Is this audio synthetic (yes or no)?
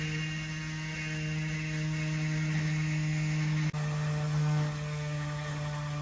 no